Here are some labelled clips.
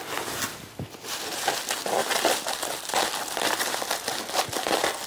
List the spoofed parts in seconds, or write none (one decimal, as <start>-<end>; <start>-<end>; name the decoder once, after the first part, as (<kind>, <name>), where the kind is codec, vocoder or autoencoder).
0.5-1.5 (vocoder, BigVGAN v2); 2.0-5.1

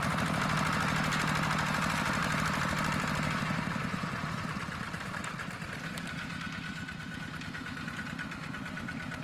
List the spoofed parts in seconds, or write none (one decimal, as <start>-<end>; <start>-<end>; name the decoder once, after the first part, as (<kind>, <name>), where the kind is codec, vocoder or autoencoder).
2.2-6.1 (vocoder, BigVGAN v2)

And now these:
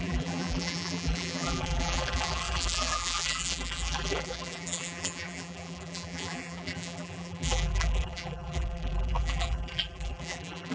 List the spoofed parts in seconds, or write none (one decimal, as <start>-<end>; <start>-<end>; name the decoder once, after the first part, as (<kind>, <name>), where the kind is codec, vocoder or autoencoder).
0.0-10.7 (vocoder, BigVGAN v2)